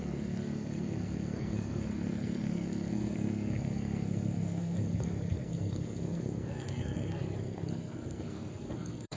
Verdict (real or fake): fake